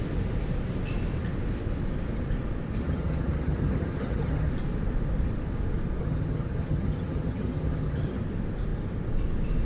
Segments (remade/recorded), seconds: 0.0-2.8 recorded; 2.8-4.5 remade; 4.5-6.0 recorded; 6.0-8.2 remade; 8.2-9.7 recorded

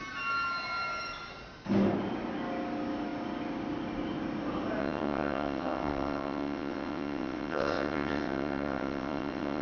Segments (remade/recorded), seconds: 0.0-4.8 recorded; 4.8-9.6 remade

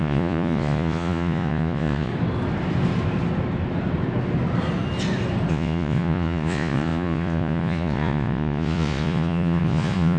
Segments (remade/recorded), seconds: 0.0-2.1 remade; 2.1-5.5 recorded; 5.5-10.2 remade